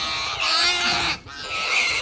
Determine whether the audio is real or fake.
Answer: real